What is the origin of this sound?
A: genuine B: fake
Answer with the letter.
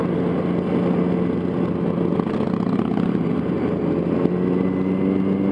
A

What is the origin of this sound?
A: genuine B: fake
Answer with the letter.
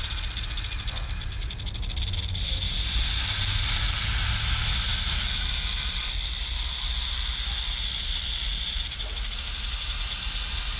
A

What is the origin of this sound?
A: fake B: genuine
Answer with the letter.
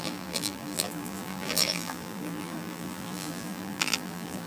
A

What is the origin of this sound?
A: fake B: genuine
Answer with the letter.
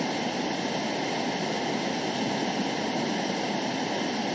B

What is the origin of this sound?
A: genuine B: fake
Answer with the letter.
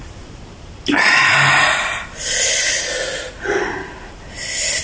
A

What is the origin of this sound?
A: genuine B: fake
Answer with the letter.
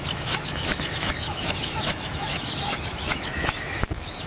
B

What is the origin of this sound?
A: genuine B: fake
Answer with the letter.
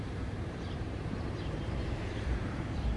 B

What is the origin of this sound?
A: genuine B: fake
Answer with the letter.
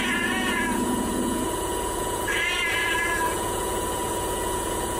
B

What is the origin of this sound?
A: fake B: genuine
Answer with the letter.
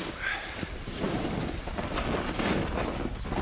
B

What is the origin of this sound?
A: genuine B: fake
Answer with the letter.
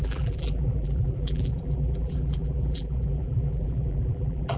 B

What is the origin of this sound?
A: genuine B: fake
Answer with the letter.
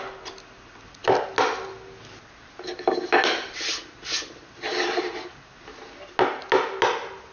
A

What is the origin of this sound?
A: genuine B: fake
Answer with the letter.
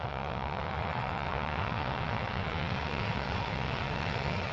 B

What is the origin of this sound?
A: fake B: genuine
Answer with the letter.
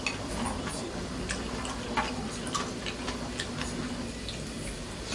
B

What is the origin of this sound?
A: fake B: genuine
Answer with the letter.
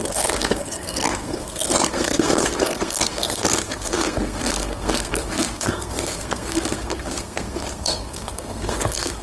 A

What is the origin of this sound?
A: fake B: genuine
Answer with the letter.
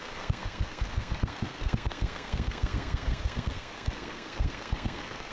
A